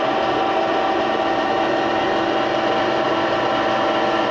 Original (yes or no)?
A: yes